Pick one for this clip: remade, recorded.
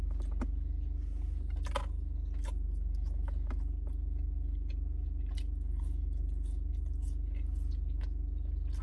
recorded